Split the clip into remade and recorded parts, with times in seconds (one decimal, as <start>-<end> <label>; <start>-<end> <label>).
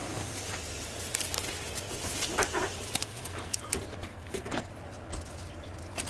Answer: 0.0-3.0 recorded; 3.0-3.6 remade; 3.6-4.1 recorded; 4.1-4.7 remade; 4.7-6.1 recorded